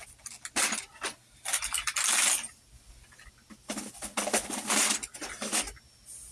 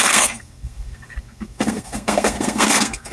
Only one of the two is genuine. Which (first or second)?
first